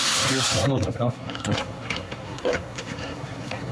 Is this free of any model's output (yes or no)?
no